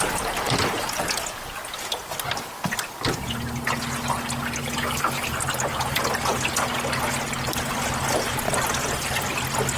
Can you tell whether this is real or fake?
real